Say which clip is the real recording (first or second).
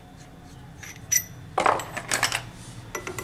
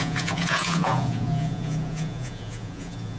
first